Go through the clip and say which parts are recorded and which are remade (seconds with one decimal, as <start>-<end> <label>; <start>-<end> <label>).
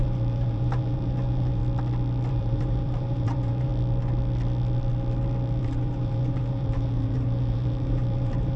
0.0-1.6 remade; 1.6-2.3 recorded; 2.3-3.7 remade; 3.7-5.6 recorded; 5.6-8.6 remade